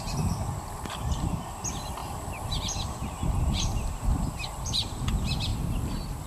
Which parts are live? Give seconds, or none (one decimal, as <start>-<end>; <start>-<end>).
0.0-2.0; 4.7-5.5